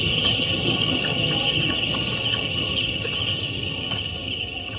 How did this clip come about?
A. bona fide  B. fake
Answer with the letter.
B